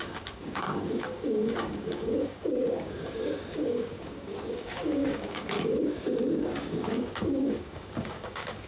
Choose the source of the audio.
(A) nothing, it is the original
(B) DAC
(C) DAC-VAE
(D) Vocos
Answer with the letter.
B